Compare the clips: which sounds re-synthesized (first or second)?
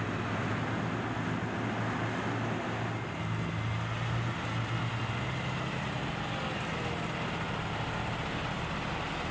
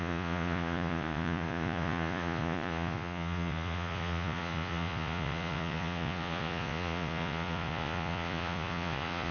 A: second